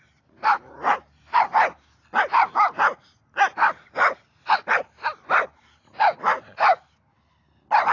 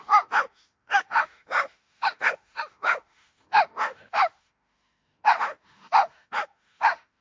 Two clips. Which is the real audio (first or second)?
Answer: first